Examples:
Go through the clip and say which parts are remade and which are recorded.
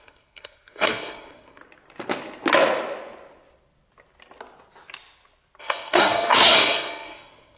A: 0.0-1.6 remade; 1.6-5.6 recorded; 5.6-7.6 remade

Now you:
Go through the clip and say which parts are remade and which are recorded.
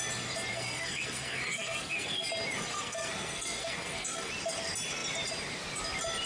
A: 0.0-0.5 recorded; 0.5-2.3 remade; 2.3-2.7 recorded; 2.7-4.3 remade; 4.3-6.3 recorded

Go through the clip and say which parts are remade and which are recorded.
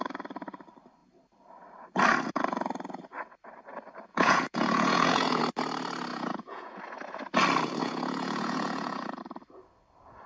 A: 0.0-4.1 recorded; 4.1-5.4 remade; 5.4-6.1 recorded; 6.1-6.8 remade; 6.8-7.8 recorded; 7.8-9.2 remade; 9.2-10.3 recorded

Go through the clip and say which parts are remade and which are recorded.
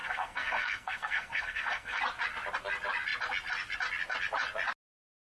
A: 0.0-2.0 remade; 2.0-5.4 recorded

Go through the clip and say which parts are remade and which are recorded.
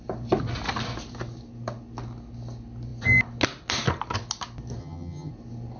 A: 0.0-4.8 recorded; 4.8-5.3 remade; 5.3-5.8 recorded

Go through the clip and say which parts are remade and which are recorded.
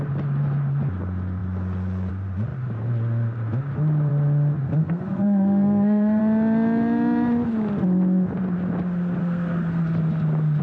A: 0.0-4.8 recorded; 4.8-6.2 remade; 6.2-9.2 recorded; 9.2-9.8 remade; 9.8-10.6 recorded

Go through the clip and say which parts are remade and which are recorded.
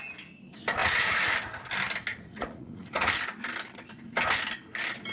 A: 0.0-0.8 recorded; 0.8-1.3 remade; 1.3-2.1 recorded; 2.1-3.2 remade; 3.2-5.1 recorded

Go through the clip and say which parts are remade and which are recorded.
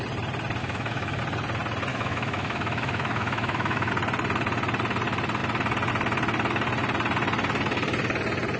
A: 0.0-0.6 recorded; 0.6-1.2 remade; 1.2-1.9 recorded; 1.9-3.9 remade; 3.9-8.6 recorded